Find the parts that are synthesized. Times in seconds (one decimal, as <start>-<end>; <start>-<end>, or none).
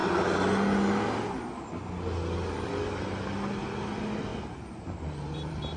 4.3-5.8